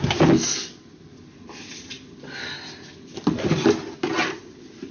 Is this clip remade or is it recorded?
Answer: recorded